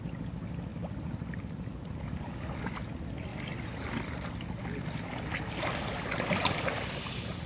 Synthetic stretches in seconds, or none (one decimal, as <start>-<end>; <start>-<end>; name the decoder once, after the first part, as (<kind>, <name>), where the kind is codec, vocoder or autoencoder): none